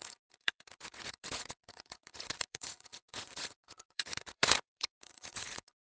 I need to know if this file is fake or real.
fake